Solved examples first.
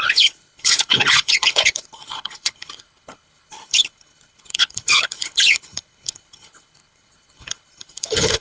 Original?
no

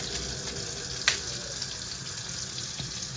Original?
yes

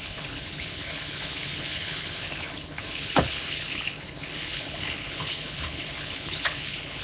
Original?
no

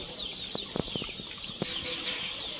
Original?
yes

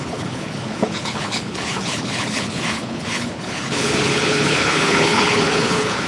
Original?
no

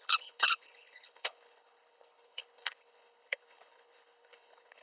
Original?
no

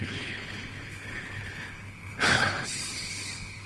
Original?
no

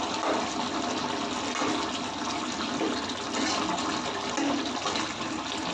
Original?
yes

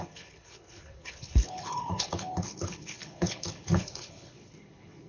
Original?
no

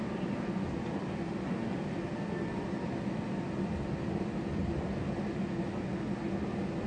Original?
yes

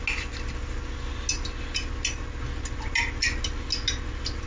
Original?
yes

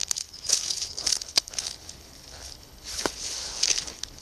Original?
no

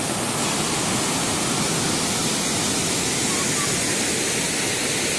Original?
yes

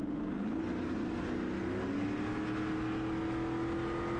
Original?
yes